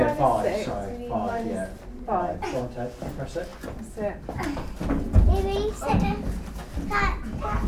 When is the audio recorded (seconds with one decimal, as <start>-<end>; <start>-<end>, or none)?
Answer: 0.0-7.7